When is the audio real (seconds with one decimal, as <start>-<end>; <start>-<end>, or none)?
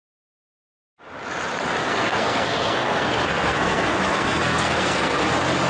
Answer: 0.0-1.8; 5.2-5.7